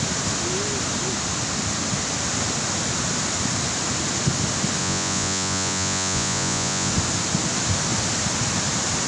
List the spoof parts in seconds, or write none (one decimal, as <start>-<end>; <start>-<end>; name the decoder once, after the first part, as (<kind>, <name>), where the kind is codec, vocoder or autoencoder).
4.8-6.9 (vocoder, Vocos)